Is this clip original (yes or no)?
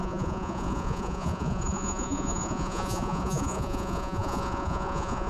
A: no